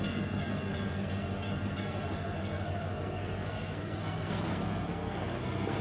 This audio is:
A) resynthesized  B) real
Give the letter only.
A